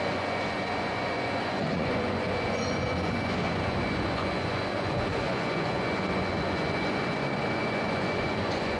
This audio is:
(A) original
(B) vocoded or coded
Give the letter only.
B